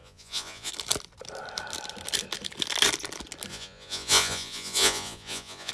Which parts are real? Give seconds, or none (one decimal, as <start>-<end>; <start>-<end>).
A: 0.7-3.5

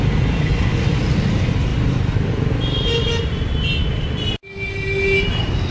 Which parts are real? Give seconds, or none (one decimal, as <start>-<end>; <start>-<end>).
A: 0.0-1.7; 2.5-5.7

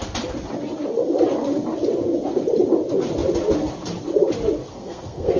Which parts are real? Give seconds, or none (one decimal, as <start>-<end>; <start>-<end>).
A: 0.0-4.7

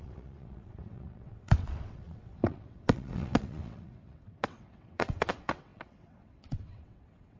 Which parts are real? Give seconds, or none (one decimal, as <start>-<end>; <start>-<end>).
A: none

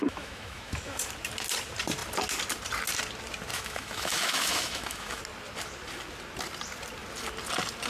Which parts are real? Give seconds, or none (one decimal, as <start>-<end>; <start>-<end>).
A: 1.0-3.5; 5.2-7.9